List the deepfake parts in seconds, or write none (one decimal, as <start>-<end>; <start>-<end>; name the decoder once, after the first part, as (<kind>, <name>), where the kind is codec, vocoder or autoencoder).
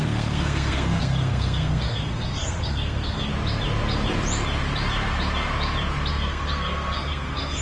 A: 0.0-3.3 (codec, SNAC); 6.1-7.6